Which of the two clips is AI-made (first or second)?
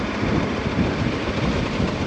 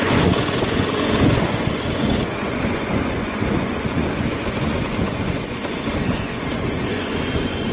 second